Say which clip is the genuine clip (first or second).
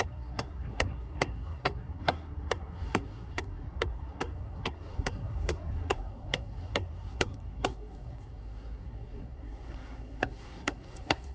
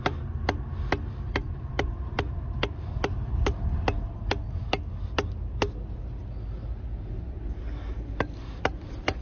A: second